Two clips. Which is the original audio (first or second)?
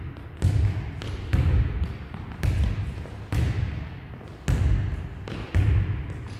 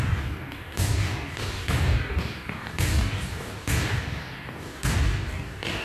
first